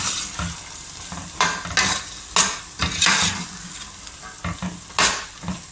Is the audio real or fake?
real